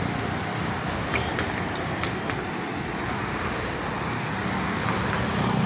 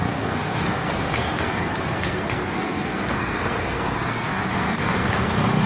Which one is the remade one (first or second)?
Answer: second